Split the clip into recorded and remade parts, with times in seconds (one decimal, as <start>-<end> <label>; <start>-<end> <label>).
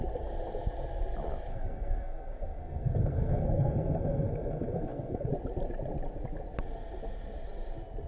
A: 0.0-1.5 recorded; 1.5-5.3 remade; 5.3-8.1 recorded